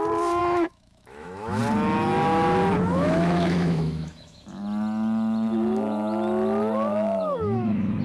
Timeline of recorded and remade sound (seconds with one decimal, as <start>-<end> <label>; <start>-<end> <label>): 0.0-0.4 recorded; 0.4-1.6 remade; 1.6-2.9 recorded; 2.9-4.6 remade; 4.6-6.9 recorded; 6.9-8.0 remade